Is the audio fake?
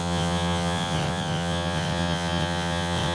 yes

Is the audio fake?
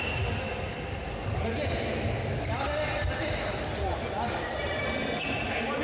no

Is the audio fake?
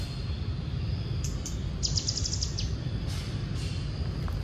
no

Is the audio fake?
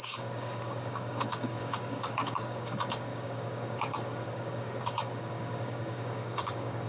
yes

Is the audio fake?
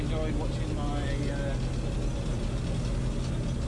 no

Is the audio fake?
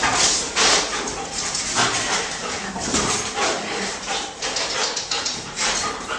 yes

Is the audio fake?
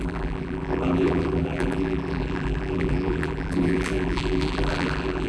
yes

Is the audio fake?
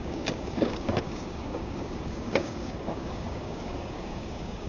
yes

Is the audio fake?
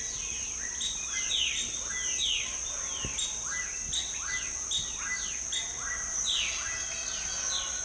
no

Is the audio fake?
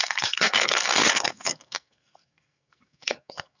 yes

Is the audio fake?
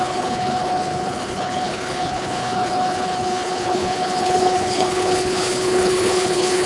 yes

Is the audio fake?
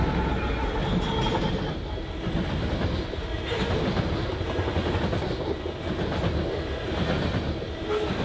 no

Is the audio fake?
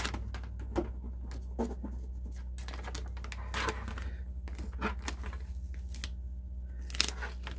no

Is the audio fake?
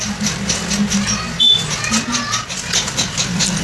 no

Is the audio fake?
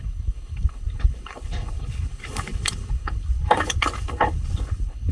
yes